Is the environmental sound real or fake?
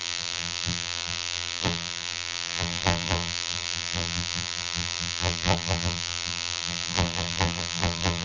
fake